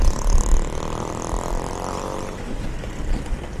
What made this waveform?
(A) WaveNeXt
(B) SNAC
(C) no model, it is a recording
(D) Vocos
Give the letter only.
C